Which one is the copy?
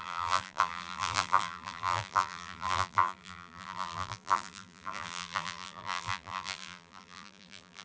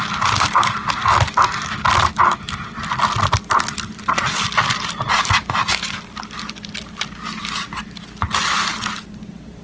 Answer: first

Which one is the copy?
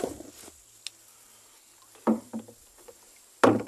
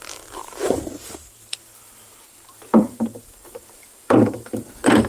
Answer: second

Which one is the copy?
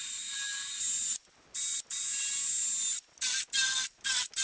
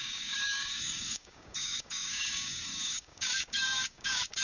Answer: second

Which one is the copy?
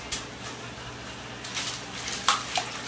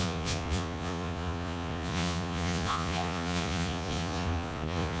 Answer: second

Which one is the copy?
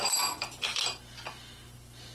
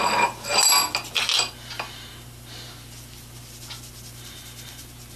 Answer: first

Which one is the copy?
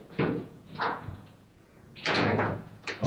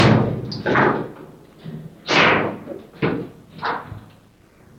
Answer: first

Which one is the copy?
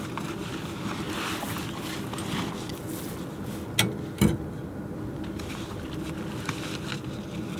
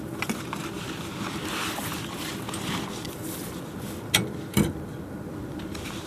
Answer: second